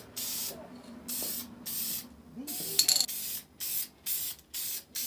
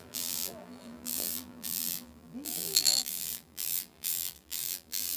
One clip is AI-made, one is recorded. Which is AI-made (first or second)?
second